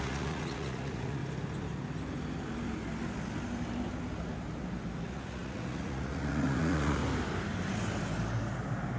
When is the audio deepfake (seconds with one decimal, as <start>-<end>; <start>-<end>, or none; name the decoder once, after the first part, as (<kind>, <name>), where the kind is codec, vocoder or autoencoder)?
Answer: 0.0-1.2 (vocoder, Vocos); 5.0-7.0